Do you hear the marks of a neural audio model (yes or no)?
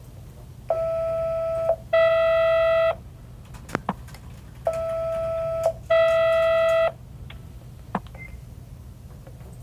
no